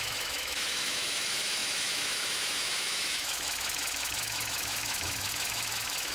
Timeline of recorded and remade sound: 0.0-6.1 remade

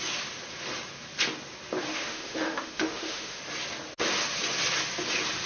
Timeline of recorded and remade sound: 0.0-1.9 recorded; 1.9-3.4 remade; 3.4-5.5 recorded

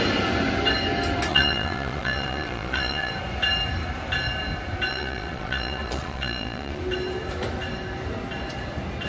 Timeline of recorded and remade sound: 0.0-1.3 recorded; 1.3-3.1 remade; 3.1-4.9 recorded; 4.9-6.8 remade; 6.8-9.1 recorded

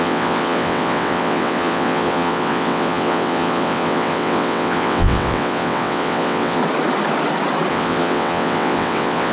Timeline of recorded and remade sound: 0.0-6.6 remade; 6.6-7.7 recorded; 7.7-9.3 remade

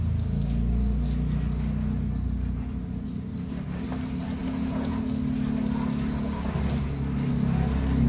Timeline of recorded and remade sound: 0.0-4.4 recorded; 4.4-5.0 remade; 5.0-8.1 recorded

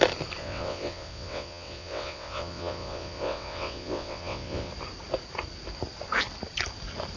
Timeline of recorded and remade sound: 0.0-0.4 recorded; 0.4-4.7 remade; 4.7-7.2 recorded

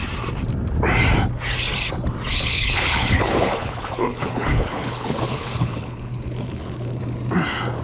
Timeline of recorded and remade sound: 0.0-2.3 recorded; 2.3-7.0 remade; 7.0-7.8 recorded